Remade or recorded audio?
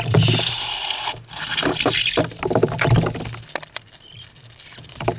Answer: recorded